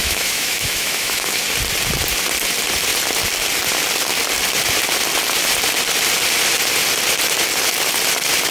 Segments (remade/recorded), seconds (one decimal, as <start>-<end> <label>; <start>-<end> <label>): 0.0-1.4 remade; 1.4-8.5 recorded